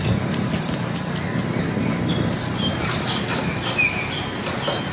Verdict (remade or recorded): recorded